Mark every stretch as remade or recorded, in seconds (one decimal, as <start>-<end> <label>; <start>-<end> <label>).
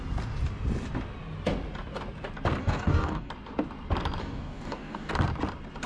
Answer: 0.0-2.6 recorded; 2.6-3.3 remade; 3.3-4.2 recorded; 4.2-5.1 remade; 5.1-5.9 recorded